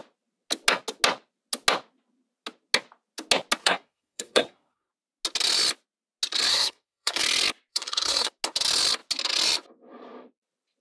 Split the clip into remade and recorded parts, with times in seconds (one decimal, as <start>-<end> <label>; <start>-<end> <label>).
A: 0.0-3.6 recorded; 3.6-4.9 remade; 4.9-6.5 recorded; 6.5-7.2 remade; 7.2-7.7 recorded; 7.7-8.3 remade; 8.3-10.8 recorded